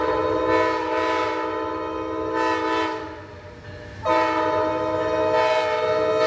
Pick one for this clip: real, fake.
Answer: real